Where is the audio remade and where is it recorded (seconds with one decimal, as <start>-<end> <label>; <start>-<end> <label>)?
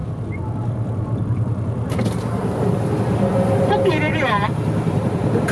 0.0-4.1 recorded; 4.1-5.5 remade